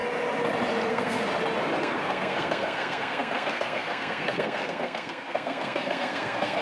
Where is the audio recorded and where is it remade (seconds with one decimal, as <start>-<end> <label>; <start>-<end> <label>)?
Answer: 0.0-0.9 recorded; 0.9-1.3 remade; 1.3-1.8 recorded; 1.8-6.6 remade